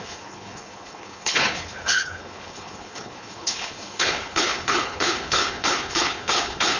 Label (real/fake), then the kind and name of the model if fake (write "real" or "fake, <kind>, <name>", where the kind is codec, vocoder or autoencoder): fake, codec, HILCodec